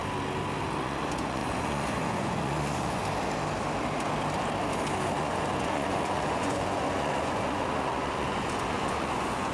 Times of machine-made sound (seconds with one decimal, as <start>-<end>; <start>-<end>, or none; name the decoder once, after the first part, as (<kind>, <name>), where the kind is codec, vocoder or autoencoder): 0.8-3.0 (vocoder, Vocos); 5.2-9.5